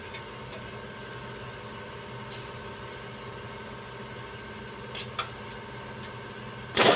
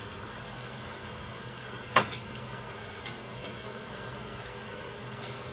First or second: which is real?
first